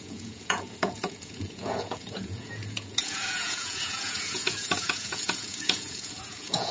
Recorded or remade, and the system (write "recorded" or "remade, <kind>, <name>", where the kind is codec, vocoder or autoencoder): remade, vocoder, Vocos